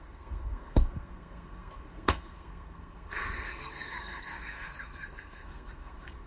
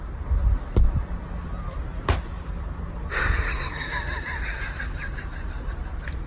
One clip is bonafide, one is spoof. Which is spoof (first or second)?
first